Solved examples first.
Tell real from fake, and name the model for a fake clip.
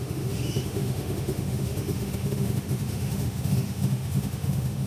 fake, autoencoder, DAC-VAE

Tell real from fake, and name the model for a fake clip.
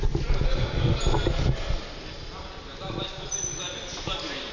real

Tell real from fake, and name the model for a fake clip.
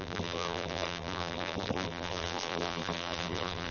fake, vocoder, BigVGAN v2